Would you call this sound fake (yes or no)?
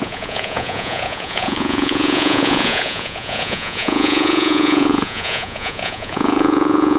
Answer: yes